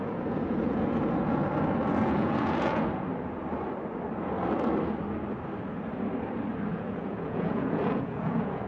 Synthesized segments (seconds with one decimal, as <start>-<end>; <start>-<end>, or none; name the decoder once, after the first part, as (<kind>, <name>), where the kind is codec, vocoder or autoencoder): 0.0-1.4 (vocoder, Vocos); 1.9-3.1; 6.7-8.7